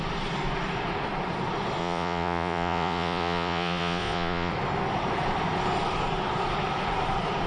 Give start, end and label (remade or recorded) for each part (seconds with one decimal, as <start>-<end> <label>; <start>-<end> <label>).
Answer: 0.0-1.8 recorded; 1.8-4.5 remade; 4.5-7.5 recorded